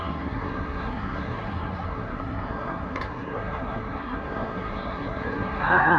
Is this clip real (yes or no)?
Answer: no